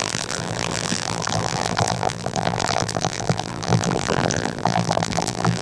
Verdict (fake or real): fake